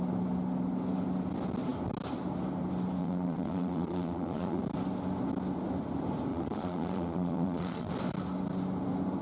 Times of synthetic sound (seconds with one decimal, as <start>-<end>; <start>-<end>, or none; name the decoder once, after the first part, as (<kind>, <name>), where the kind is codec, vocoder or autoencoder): 3.0-4.6 (vocoder, Vocos); 6.3-7.9